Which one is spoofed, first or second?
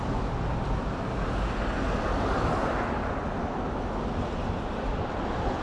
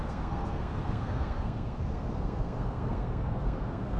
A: second